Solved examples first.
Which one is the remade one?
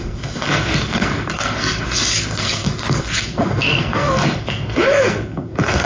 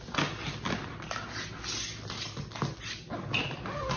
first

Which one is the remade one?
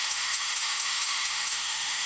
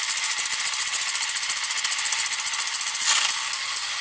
first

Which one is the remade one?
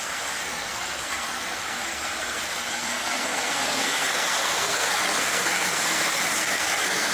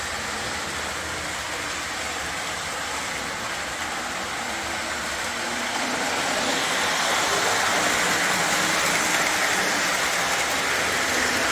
first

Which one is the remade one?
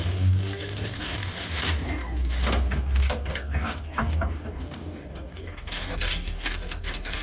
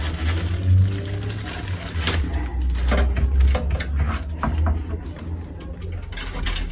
first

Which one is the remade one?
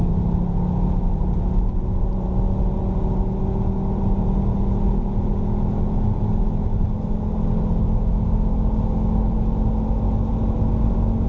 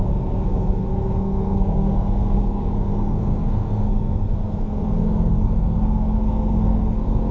second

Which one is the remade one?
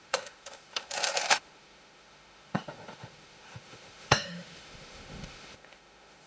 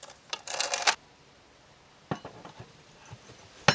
first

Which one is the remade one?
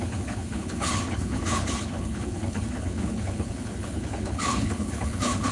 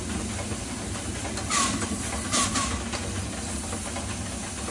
first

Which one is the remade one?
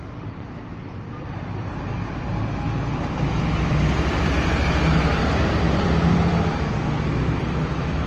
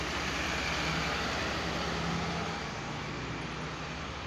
first